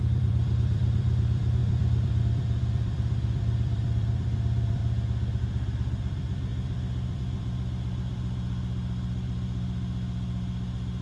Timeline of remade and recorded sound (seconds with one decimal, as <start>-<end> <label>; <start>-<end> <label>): 0.0-4.8 remade; 4.8-5.4 recorded; 5.4-11.0 remade